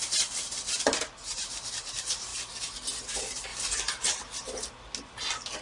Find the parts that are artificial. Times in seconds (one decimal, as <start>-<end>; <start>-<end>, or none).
none